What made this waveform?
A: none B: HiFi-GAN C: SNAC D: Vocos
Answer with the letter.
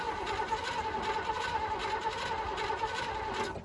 A